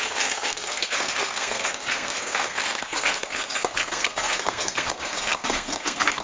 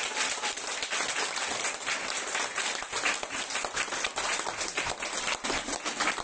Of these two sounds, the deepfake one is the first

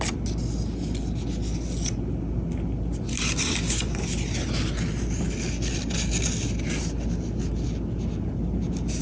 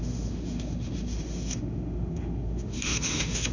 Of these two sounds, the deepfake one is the second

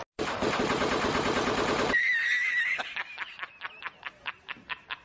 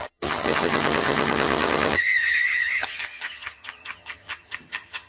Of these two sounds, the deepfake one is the second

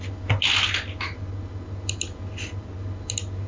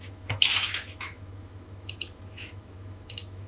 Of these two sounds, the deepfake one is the second